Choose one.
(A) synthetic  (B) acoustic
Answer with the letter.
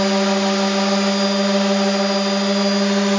B